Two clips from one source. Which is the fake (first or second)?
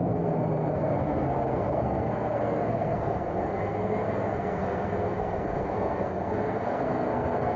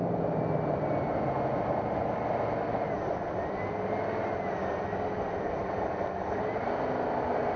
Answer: first